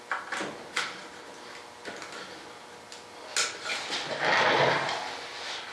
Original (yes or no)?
yes